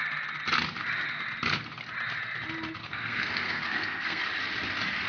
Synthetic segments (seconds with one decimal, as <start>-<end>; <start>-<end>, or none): 2.8-4.2